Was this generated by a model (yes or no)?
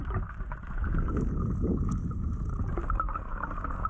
no